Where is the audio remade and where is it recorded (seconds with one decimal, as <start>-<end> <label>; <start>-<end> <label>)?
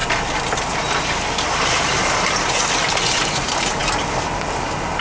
0.0-5.0 recorded